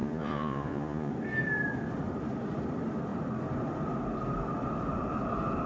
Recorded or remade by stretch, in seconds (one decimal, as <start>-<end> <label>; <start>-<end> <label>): 0.0-1.1 remade; 1.1-5.7 recorded